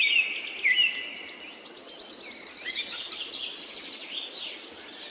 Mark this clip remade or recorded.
recorded